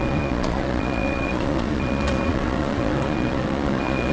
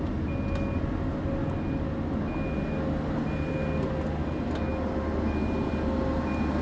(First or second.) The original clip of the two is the second